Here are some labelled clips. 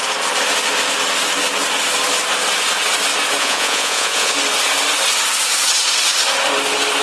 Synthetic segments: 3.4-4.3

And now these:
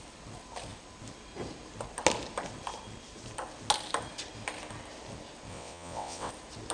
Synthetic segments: 5.5-6.3

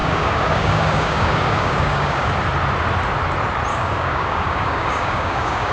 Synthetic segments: 0.0-2.3; 3.7-5.7